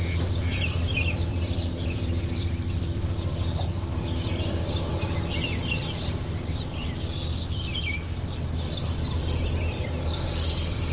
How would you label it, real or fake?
fake